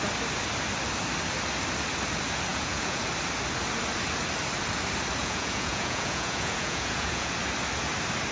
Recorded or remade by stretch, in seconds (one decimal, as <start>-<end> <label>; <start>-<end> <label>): 0.0-2.5 recorded; 2.5-3.0 remade; 3.0-5.2 recorded; 5.2-7.3 remade; 7.3-8.3 recorded